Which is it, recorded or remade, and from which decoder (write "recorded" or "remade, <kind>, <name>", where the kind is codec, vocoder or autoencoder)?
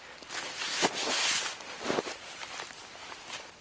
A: recorded